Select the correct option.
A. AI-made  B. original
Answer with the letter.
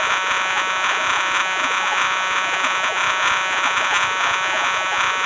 A